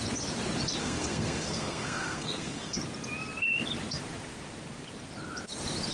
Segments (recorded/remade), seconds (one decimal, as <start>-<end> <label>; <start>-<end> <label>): 0.0-0.8 recorded; 0.8-2.8 remade; 2.8-5.9 recorded

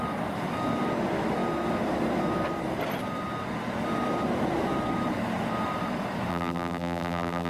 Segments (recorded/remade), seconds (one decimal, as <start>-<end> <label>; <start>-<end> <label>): 0.0-6.3 recorded; 6.3-7.5 remade

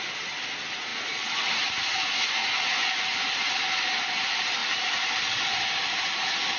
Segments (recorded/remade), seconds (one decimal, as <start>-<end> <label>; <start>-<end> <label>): 0.0-0.9 recorded; 0.9-1.6 remade; 1.6-4.6 recorded; 4.6-6.6 remade

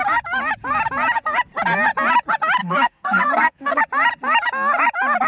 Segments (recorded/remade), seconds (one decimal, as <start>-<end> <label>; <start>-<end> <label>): 0.0-2.6 recorded; 2.6-3.8 remade; 3.8-5.3 recorded

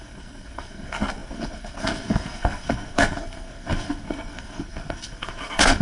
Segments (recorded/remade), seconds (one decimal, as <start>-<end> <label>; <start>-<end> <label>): 0.0-5.8 remade

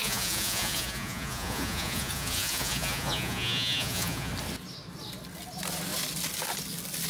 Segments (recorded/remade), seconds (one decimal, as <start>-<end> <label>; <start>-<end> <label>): 0.0-4.3 remade; 4.3-7.1 recorded

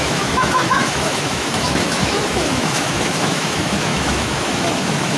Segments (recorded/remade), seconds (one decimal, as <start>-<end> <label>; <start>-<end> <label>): 0.0-5.2 remade

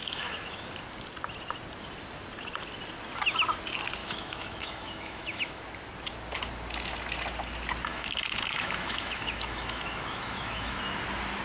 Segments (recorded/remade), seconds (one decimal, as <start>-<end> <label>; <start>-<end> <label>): 0.0-0.7 remade; 0.7-4.0 recorded; 4.0-5.6 remade; 5.6-7.9 recorded; 7.9-10.8 remade; 10.8-11.4 recorded